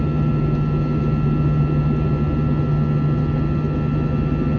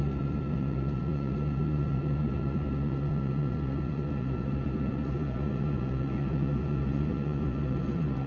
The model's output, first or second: second